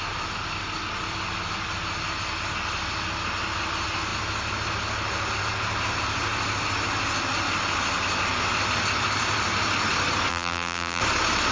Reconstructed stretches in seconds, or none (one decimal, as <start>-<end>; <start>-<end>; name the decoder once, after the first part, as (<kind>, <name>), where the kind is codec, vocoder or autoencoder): 10.3-11.0 (vocoder, BigVGAN v2)